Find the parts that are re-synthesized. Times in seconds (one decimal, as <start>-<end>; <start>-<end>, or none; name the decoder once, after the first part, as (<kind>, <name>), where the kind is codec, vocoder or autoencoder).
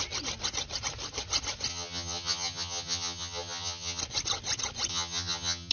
1.7-4.0 (vocoder, HiFi-GAN); 4.9-5.7